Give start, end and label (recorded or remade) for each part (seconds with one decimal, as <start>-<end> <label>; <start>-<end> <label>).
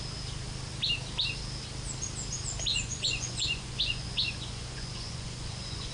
0.0-2.7 recorded; 2.7-5.9 remade